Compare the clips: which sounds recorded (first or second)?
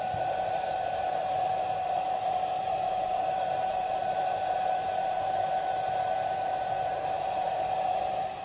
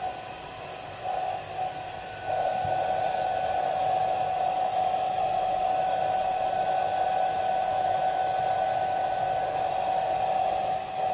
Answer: second